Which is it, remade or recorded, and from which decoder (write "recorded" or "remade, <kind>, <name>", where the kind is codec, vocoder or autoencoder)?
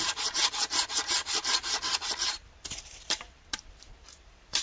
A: remade, vocoder, BigVGAN v2